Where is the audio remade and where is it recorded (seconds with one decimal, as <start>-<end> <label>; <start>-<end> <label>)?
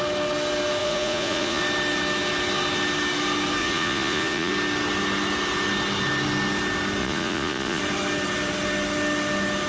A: 0.0-0.8 recorded; 0.8-1.6 remade; 1.6-3.6 recorded; 3.6-4.5 remade; 4.5-7.0 recorded; 7.0-7.8 remade; 7.8-9.7 recorded